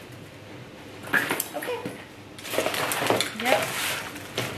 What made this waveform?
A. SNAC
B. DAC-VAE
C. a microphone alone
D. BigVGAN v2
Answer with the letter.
C